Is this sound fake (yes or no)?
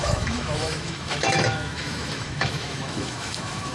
yes